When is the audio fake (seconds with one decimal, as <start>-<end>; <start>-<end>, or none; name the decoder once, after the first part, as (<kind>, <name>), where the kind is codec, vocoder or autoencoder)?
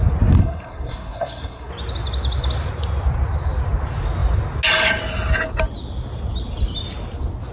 0.4-1.7 (codec, SNAC)